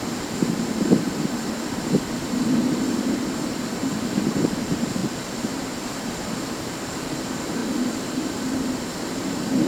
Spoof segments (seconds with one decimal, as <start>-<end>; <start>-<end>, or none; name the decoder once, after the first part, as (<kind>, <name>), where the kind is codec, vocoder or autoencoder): 0.0-3.2 (vocoder, BigVGAN v2); 3.8-9.7